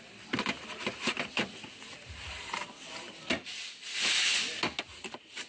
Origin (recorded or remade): recorded